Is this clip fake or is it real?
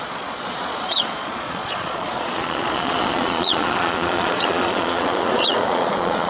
fake